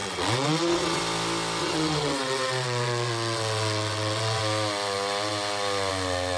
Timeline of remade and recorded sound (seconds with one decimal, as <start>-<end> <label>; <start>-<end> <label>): 0.0-1.0 remade; 1.0-1.6 recorded; 1.6-4.4 remade; 4.4-6.4 recorded